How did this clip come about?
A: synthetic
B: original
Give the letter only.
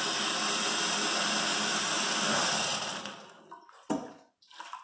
B